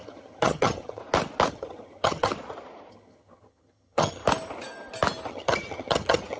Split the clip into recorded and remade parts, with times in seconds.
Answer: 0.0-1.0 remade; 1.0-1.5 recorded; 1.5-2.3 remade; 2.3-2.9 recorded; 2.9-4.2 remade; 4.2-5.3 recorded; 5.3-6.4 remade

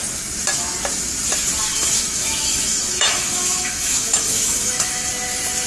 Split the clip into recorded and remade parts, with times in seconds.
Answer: 0.0-1.7 recorded; 1.7-5.1 remade; 5.1-5.7 recorded

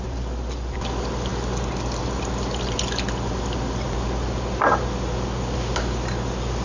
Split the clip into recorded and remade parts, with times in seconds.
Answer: 0.0-6.6 recorded